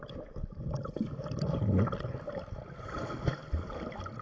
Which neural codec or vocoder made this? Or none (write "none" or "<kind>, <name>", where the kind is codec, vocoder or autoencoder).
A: none